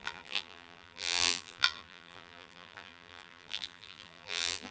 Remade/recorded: remade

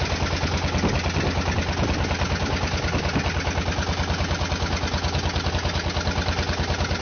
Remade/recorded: recorded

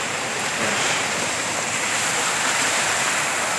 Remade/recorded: remade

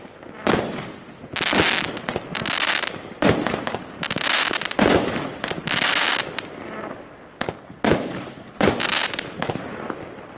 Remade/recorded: recorded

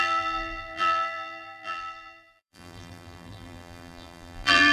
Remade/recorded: remade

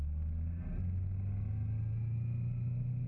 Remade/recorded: recorded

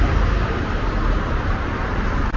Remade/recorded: recorded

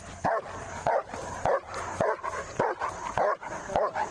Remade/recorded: recorded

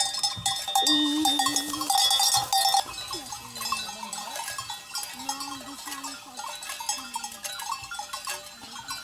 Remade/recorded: recorded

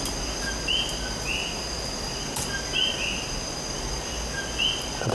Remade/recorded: recorded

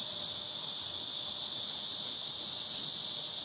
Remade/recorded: recorded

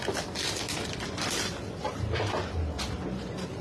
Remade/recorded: remade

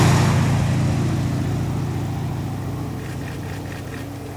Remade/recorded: recorded